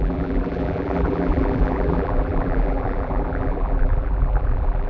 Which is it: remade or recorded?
remade